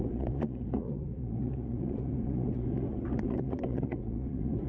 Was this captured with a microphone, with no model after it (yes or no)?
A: no